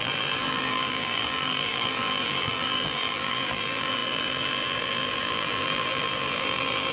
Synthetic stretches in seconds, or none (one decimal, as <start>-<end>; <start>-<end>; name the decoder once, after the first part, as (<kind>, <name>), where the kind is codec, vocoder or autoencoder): 0.0-6.9 (vocoder, BigVGAN v2)